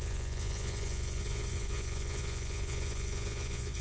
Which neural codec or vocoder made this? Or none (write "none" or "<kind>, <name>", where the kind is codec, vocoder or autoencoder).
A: vocoder, Vocos